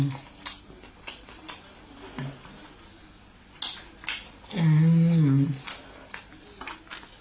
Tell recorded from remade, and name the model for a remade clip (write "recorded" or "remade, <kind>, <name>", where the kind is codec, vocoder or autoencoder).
recorded